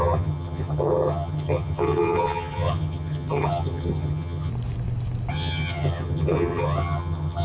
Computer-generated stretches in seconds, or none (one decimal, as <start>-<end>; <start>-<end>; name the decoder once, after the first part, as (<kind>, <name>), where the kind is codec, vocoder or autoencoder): 0.0-4.5 (vocoder, HiFi-GAN); 5.3-7.4